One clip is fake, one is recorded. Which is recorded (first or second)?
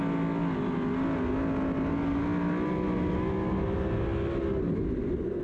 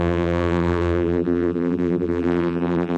first